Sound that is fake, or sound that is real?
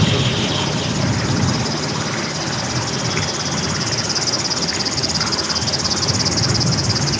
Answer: real